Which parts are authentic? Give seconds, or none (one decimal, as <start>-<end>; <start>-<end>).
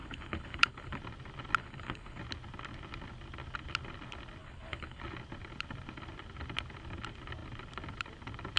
1.0-1.6; 2.2-4.4; 5.0-8.6